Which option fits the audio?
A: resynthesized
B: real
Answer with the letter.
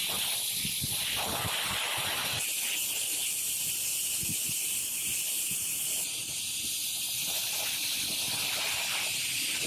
B